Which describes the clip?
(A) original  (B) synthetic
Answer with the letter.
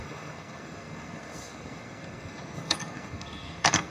B